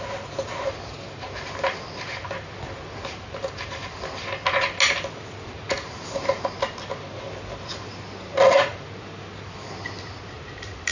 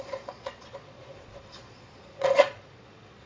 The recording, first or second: first